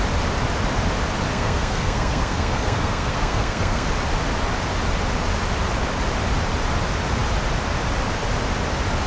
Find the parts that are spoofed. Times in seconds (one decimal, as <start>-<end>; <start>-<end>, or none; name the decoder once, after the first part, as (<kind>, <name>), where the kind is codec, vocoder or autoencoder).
1.3-3.9 (codec, SNAC)